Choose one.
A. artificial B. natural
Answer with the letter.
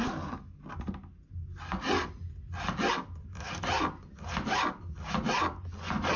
B